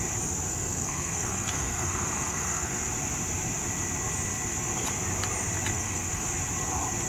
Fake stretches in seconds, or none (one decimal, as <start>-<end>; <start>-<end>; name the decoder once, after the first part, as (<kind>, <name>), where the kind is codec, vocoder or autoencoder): 0.5-2.8 (codec, SNAC); 5.7-6.3